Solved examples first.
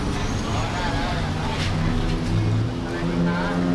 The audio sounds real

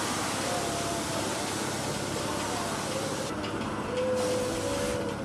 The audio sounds real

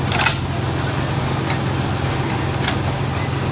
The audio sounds real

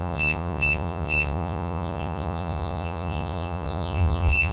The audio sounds fake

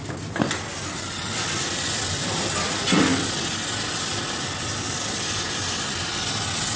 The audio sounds real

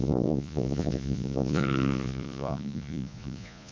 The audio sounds fake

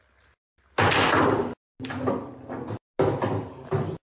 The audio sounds real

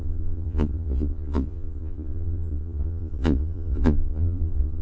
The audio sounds fake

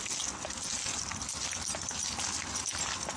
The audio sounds real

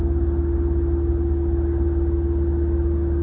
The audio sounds real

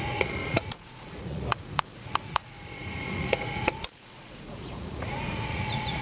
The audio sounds fake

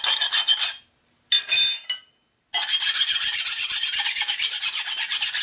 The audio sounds real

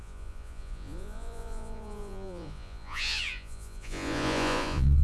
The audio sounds fake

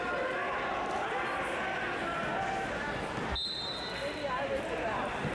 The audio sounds real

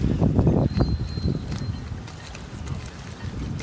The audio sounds real